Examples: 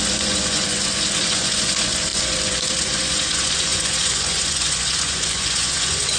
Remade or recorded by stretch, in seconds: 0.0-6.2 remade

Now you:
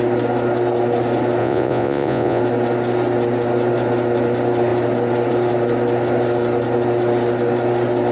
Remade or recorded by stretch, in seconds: 0.0-1.4 recorded; 1.4-2.4 remade; 2.4-8.1 recorded